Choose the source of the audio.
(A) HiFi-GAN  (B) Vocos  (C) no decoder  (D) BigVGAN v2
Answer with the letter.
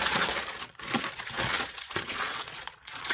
B